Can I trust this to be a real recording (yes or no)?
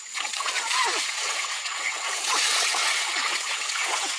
no